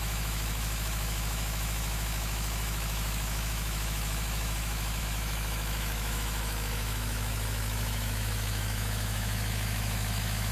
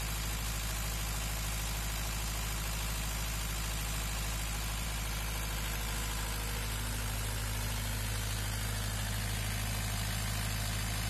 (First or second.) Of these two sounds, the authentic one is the second